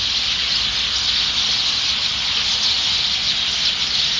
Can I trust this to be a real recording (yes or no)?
yes